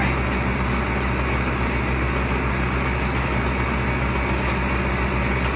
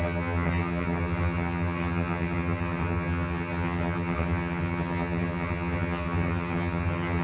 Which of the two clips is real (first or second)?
first